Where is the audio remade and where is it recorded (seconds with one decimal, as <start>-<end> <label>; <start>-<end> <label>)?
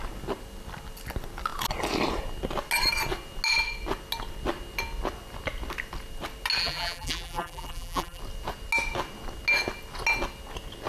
0.0-6.6 recorded; 6.6-8.2 remade; 8.2-10.9 recorded